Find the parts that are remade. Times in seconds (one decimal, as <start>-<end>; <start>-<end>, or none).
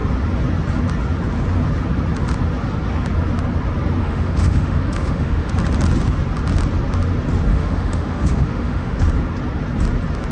4.0-5.5; 7.5-9.0